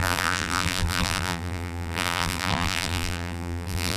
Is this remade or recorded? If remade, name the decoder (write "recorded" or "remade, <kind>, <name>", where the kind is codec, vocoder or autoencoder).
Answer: remade, vocoder, BigVGAN v2